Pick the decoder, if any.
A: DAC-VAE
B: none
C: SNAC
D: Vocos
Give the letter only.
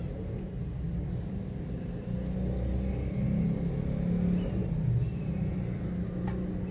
B